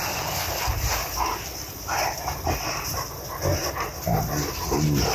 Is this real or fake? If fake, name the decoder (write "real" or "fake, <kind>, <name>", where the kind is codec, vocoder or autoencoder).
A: real